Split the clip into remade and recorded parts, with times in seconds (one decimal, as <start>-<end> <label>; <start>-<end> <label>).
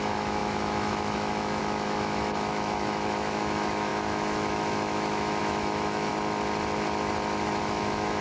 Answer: 0.0-6.1 remade; 6.1-7.6 recorded; 7.6-8.2 remade